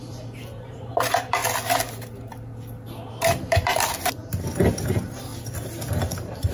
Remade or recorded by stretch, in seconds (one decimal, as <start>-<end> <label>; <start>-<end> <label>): 0.0-1.4 remade; 1.4-3.1 recorded; 3.1-3.7 remade; 3.7-4.8 recorded; 4.8-5.3 remade; 5.3-6.1 recorded; 6.1-6.5 remade